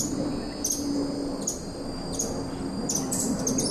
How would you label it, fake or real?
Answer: real